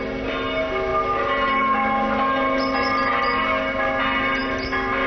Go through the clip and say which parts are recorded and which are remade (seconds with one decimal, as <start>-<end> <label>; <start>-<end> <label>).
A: 0.0-5.1 recorded